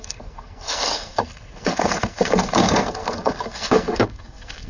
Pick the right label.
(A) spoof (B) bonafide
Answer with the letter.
A